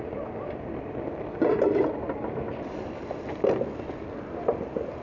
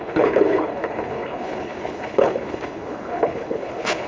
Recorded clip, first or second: first